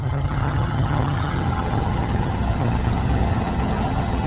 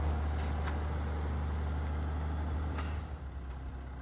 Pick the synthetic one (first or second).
first